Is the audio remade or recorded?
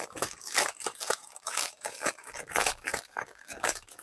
remade